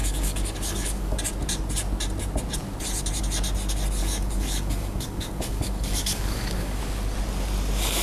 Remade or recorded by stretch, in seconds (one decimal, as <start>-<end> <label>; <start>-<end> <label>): 0.0-1.2 remade; 1.2-4.0 recorded; 4.0-6.8 remade; 6.8-8.0 recorded